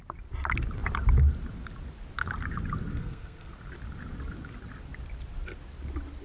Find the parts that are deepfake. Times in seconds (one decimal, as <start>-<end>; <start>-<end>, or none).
2.9-3.5